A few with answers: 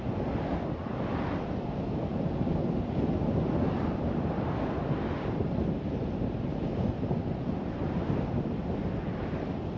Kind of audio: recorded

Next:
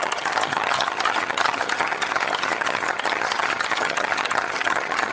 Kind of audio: remade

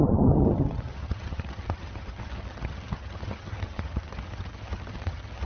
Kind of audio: remade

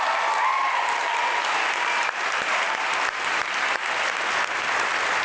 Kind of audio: recorded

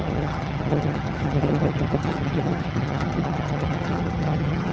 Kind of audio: remade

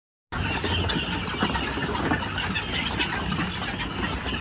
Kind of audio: recorded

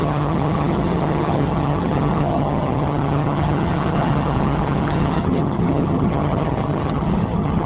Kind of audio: remade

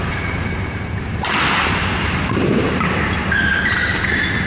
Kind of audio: recorded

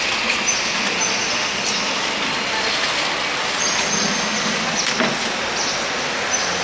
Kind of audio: recorded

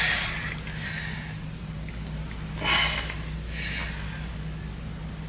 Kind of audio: recorded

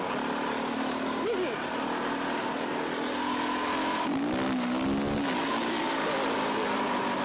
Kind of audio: recorded